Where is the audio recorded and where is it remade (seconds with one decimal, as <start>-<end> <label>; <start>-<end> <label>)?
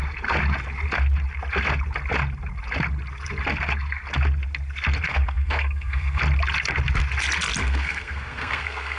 0.0-5.1 recorded; 5.1-6.2 remade; 6.2-7.6 recorded; 7.6-9.0 remade